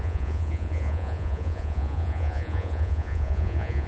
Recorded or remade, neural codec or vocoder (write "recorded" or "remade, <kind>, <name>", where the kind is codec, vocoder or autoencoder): remade, vocoder, Vocos